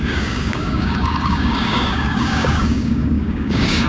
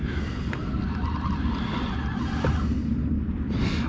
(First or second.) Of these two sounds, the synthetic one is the first